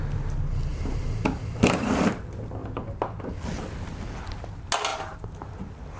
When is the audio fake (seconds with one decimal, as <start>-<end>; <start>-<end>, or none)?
0.7-2.2; 4.9-6.0